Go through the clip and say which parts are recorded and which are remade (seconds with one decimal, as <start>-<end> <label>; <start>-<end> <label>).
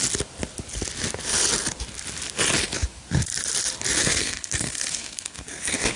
0.0-4.0 recorded; 4.0-6.0 remade